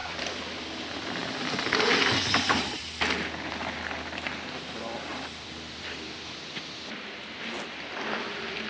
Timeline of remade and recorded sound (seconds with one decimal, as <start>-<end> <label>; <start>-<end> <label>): 0.0-0.7 remade; 0.7-5.1 recorded; 5.1-6.4 remade; 6.4-8.7 recorded